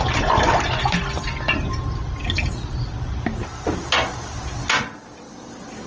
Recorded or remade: recorded